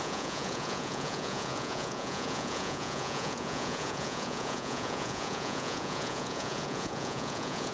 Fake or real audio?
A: fake